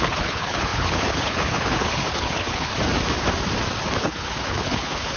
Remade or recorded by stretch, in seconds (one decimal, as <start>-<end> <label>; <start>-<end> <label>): 0.0-2.7 remade; 2.7-4.0 recorded; 4.0-5.2 remade